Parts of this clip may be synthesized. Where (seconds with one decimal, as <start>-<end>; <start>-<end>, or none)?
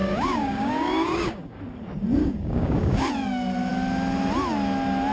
0.0-1.6; 2.2-3.1